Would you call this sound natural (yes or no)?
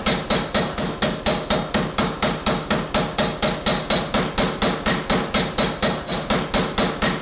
yes